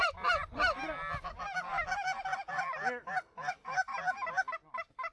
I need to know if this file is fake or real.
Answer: real